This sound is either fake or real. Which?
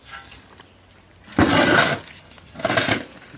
real